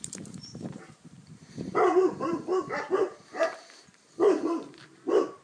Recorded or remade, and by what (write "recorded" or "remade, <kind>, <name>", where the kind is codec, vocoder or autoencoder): remade, vocoder, BigVGAN v2